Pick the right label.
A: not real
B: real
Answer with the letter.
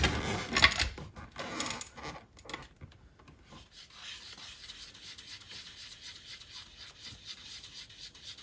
B